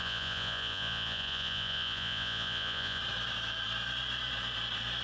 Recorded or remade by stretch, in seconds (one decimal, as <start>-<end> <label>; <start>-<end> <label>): 0.0-3.0 remade; 3.0-5.0 recorded